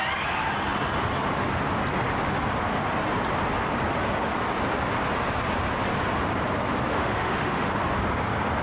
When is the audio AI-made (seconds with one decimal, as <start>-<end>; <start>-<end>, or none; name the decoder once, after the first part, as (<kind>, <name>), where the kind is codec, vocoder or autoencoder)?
6.9-7.7 (autoencoder, DAC-VAE)